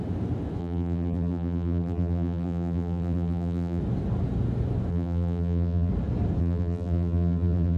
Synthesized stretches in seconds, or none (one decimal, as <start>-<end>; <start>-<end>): 0.6-3.8; 4.9-5.9; 6.4-7.8